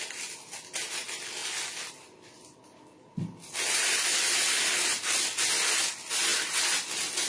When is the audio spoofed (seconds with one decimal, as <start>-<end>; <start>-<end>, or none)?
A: none